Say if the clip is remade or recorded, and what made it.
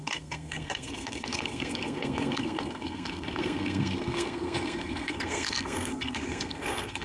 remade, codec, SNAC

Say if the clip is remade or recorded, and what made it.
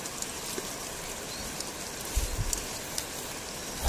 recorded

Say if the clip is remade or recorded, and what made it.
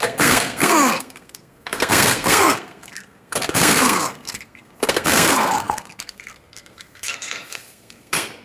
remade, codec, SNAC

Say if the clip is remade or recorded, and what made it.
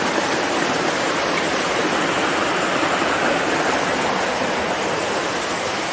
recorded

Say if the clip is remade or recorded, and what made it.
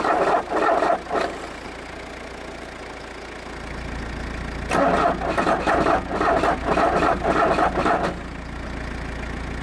recorded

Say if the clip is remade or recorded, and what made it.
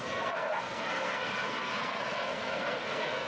remade, codec, SNAC